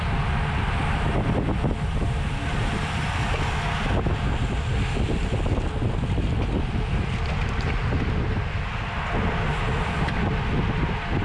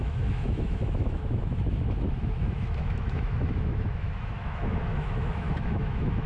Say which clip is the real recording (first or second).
first